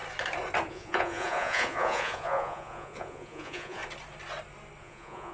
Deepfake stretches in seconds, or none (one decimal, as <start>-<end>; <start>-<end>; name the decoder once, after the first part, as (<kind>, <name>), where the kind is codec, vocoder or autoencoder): 0.7-3.8 (vocoder, Vocos); 4.8-5.3